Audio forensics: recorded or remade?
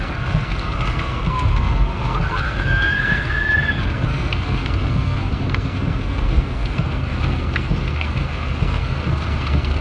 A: remade